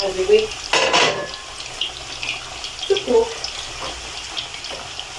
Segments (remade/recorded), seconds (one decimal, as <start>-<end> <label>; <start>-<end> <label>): 0.0-5.2 recorded